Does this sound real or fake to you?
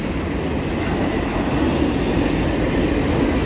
real